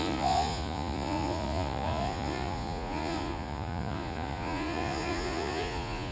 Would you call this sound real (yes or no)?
no